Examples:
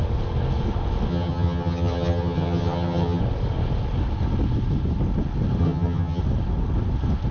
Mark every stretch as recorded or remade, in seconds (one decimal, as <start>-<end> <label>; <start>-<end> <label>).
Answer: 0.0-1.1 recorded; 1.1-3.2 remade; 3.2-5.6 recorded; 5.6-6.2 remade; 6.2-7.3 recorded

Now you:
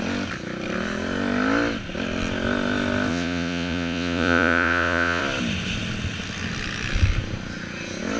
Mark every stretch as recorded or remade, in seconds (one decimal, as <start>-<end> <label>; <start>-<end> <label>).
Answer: 0.0-3.1 recorded; 3.1-5.2 remade; 5.2-8.2 recorded

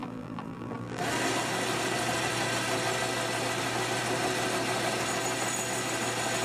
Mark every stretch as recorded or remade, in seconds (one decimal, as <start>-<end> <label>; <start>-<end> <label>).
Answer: 0.0-1.0 remade; 1.0-6.4 recorded

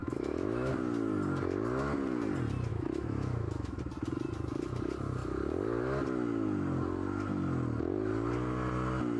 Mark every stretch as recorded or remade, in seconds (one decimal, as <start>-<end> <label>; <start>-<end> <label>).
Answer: 0.0-0.7 remade; 0.7-2.7 recorded; 2.7-3.8 remade; 3.8-9.2 recorded

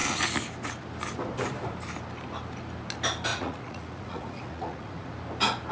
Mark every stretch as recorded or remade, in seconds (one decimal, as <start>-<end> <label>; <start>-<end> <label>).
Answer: 0.0-3.3 recorded; 3.3-5.1 remade; 5.1-5.7 recorded

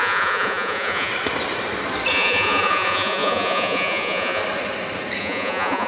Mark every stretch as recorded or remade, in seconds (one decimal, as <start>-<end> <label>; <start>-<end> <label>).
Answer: 0.0-1.1 remade; 1.1-2.1 recorded; 2.1-4.4 remade; 4.4-5.2 recorded; 5.2-5.9 remade

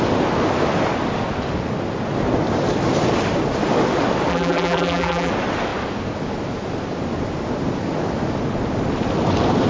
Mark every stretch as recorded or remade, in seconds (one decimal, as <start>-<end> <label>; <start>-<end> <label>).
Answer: 0.0-4.3 recorded; 4.3-5.3 remade; 5.3-9.7 recorded